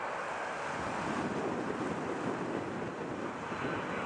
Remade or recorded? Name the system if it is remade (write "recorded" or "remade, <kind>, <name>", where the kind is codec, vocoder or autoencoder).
recorded